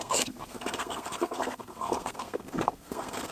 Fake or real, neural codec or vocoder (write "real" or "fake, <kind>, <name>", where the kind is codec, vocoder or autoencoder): fake, codec, SNAC